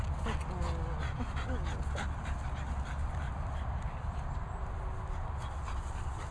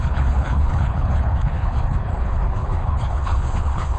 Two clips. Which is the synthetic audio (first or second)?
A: second